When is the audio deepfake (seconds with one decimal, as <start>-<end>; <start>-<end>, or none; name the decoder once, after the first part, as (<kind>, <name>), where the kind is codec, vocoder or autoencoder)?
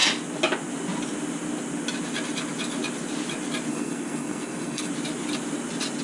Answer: 3.7-4.9 (codec, SNAC)